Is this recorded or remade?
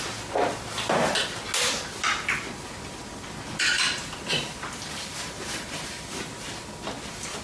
recorded